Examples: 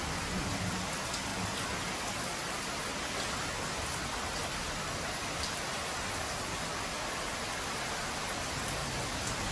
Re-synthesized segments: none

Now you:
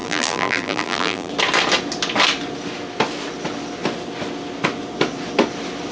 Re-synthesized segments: 0.0-1.3 (vocoder, BigVGAN v2)

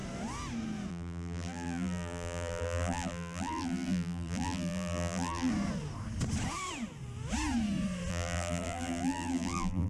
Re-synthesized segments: 0.9-5.5 (vocoder, BigVGAN v2); 8.1-9.9

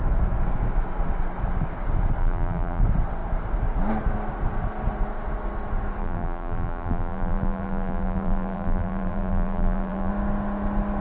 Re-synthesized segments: 2.2-2.8 (vocoder, BigVGAN v2); 6.0-10.1